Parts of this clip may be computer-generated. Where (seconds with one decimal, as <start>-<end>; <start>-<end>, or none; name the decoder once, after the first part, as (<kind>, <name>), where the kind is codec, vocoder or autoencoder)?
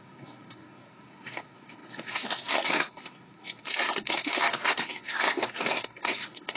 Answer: 0.0-6.6 (codec, SNAC)